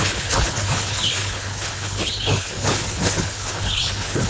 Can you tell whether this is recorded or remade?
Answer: remade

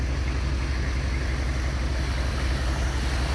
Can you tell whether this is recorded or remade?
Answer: recorded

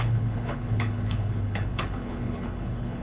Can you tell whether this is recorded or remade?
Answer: remade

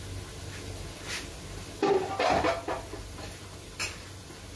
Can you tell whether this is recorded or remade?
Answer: recorded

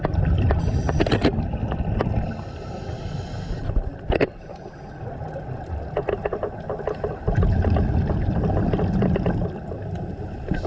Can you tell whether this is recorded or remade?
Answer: recorded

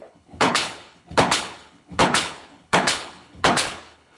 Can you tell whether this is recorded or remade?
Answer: remade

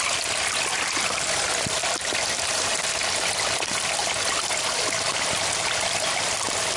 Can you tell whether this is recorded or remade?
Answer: recorded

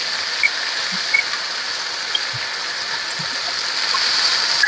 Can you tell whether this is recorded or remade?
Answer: recorded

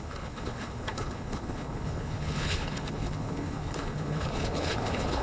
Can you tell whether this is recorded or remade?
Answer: remade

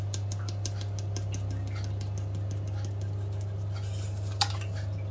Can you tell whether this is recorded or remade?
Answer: recorded